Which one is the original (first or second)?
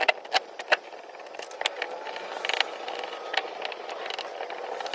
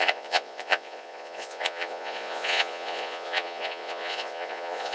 first